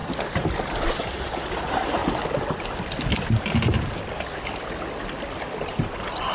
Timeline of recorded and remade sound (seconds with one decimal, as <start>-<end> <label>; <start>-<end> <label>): 0.0-1.5 recorded; 1.5-2.0 remade; 2.0-5.8 recorded; 5.8-6.3 remade